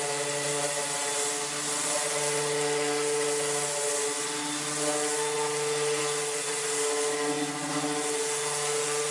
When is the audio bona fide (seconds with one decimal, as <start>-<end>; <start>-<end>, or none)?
0.0-9.1